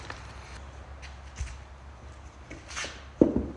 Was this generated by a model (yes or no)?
no